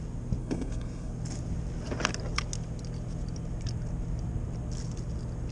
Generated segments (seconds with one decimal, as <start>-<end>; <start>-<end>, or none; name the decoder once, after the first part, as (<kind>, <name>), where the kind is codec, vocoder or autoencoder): 0.4-1.1 (codec, SNAC)